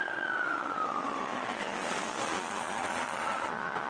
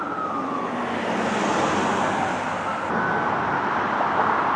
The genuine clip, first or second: second